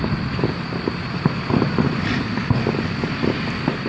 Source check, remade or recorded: recorded